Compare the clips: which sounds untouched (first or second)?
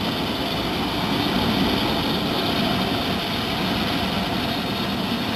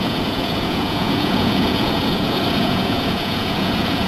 first